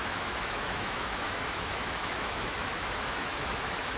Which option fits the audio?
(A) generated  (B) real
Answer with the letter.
A